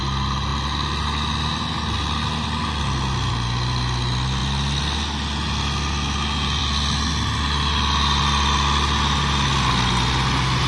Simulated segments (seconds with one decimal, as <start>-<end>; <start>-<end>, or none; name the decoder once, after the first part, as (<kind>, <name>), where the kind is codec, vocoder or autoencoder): none